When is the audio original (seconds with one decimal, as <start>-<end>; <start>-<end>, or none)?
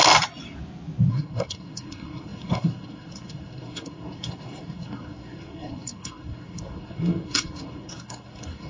0.0-1.1